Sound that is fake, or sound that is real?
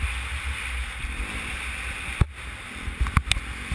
real